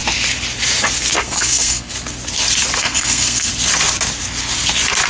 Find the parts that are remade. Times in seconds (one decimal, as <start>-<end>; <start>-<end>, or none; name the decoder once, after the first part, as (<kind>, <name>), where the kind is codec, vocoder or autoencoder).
1.2-1.9 (codec, SNAC); 2.8-3.5

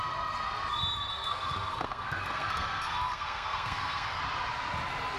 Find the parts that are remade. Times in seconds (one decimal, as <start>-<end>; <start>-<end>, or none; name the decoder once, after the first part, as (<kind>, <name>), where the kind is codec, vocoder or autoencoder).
1.1-4.2 (codec, SNAC)

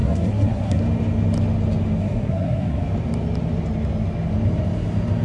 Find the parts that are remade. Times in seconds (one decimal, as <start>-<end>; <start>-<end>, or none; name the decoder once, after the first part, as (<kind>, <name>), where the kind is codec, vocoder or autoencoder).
0.0-0.8 (codec, SNAC); 2.0-2.8

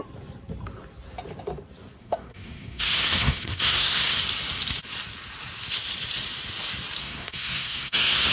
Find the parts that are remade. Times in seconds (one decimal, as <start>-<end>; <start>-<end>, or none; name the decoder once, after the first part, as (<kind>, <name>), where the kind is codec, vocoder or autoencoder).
2.0-4.2 (codec, SNAC); 7.0-8.3

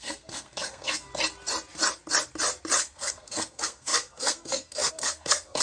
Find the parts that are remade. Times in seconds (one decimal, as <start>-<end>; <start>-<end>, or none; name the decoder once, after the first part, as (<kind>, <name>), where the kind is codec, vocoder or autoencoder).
0.0-1.1 (codec, SNAC); 2.8-5.6

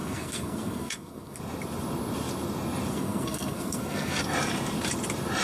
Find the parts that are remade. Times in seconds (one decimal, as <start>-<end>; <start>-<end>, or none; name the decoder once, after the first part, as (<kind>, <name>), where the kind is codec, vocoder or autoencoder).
0.0-1.4 (codec, SNAC); 2.9-4.2

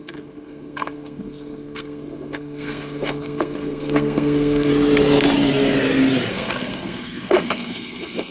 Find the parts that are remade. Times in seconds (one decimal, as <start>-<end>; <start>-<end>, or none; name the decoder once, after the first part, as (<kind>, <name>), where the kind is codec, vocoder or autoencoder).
0.0-4.7 (codec, SNAC); 6.3-8.3

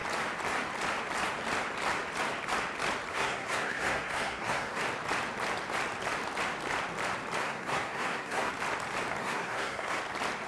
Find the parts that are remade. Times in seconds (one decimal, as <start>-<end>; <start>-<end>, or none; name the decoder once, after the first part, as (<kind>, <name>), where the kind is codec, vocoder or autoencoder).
3.1-4.8 (codec, SNAC); 7.4-8.5; 9.2-10.0